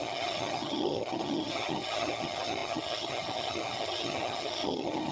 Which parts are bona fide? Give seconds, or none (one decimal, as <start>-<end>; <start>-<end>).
none